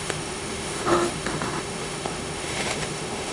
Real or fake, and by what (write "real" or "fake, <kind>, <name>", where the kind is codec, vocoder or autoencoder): fake, autoencoder, DAC-VAE